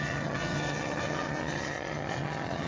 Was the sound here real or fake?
fake